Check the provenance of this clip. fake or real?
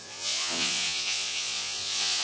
fake